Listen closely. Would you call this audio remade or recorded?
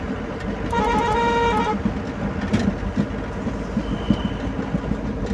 recorded